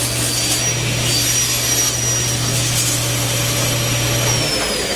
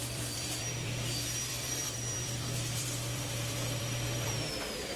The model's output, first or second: second